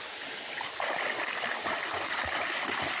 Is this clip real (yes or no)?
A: yes